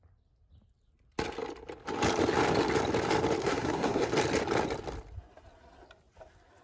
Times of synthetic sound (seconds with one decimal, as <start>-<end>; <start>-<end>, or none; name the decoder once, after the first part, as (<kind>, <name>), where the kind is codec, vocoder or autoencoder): 3.4-4.1 (codec, SNAC)